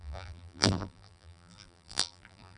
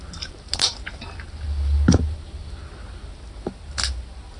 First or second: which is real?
second